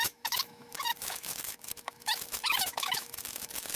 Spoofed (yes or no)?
yes